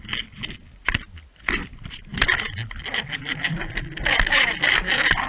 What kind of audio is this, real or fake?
real